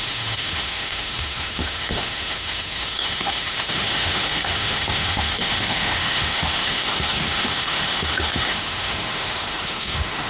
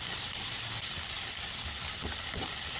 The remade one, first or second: first